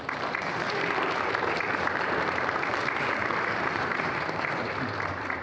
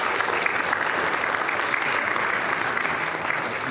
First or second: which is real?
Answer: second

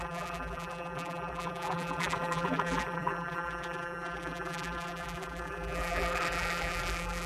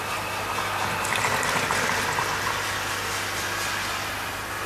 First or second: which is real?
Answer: second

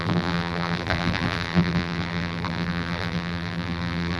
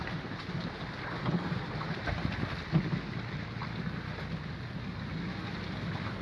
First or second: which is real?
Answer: second